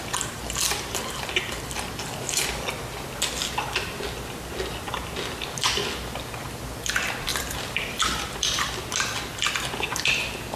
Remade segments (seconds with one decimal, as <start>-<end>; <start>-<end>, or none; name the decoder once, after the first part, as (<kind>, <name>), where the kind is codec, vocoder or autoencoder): none

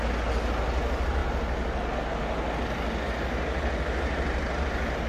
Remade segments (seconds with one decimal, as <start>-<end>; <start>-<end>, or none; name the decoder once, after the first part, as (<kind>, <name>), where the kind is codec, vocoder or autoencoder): none

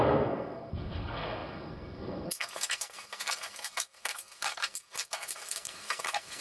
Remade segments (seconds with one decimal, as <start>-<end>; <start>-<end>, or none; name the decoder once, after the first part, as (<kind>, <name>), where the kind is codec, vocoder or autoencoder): 0.0-6.4 (codec, SNAC)

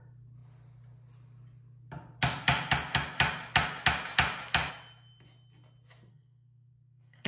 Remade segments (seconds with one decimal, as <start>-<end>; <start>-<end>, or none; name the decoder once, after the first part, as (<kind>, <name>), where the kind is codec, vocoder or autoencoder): 6.1-7.3 (codec, SNAC)

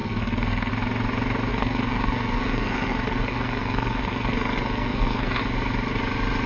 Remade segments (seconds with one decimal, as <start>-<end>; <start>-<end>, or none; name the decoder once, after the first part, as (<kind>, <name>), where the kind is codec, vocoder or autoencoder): 0.0-0.7 (codec, SNAC); 1.5-5.4

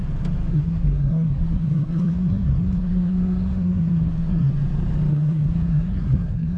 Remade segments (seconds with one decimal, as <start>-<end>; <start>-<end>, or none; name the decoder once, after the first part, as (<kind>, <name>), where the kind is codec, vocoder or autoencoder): 0.5-4.5 (codec, SNAC); 5.1-6.6

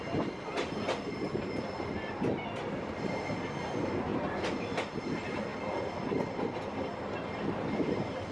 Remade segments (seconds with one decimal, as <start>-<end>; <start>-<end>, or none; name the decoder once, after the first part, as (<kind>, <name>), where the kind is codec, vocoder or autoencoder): none